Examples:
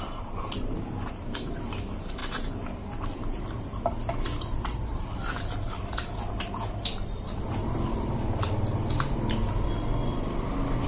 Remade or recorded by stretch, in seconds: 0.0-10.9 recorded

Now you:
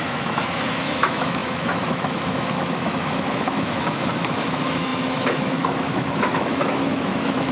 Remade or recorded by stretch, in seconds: 0.0-7.5 remade

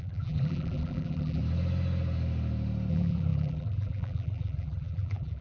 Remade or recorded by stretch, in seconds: 0.0-1.4 remade; 1.4-2.9 recorded; 2.9-5.4 remade

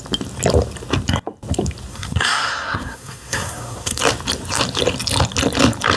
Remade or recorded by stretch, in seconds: 0.0-1.9 recorded; 1.9-4.0 remade; 4.0-6.0 recorded

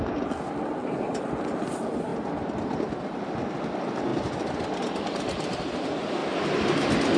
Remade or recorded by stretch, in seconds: 0.0-7.2 recorded

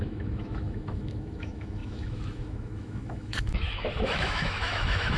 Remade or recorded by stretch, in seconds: 0.0-5.2 remade